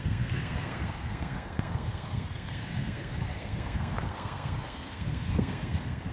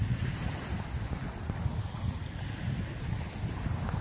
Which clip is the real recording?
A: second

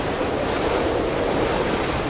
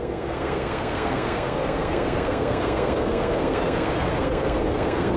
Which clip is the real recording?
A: first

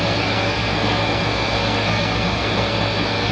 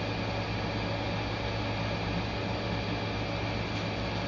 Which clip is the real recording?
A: second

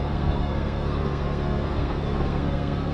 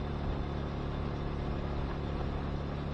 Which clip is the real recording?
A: second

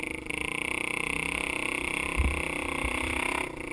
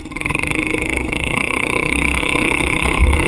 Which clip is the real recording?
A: first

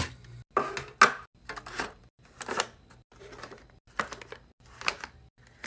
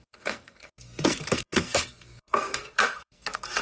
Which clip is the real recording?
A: first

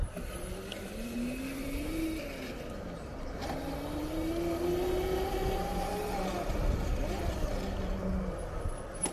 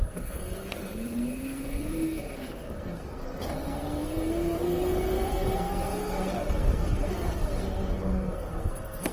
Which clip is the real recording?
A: first